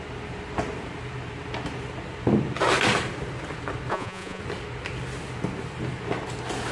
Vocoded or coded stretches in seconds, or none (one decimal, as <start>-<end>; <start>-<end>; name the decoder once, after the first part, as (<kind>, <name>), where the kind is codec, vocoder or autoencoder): 3.9-4.4 (vocoder, Vocos)